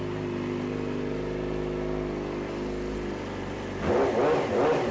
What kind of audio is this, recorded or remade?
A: recorded